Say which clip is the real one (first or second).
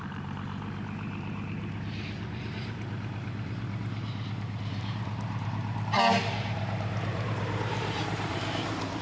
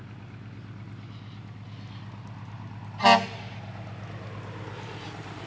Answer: second